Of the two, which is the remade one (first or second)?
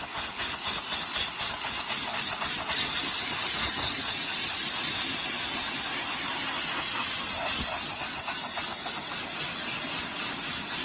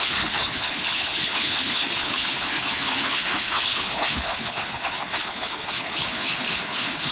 second